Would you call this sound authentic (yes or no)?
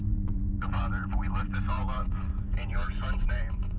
no